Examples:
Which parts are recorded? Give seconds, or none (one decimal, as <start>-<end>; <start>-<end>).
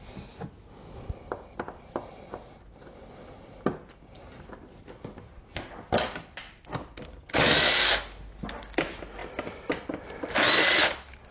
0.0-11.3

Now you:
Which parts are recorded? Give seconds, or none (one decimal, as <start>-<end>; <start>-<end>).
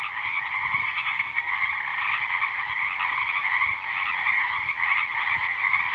0.0-0.8; 1.5-5.9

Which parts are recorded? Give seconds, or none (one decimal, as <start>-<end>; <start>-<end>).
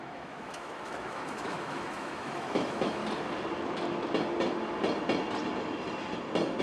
3.0-6.6